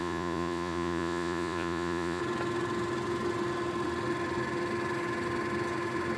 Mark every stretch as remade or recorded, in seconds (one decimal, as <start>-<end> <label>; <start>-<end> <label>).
0.0-2.2 remade; 2.2-6.2 recorded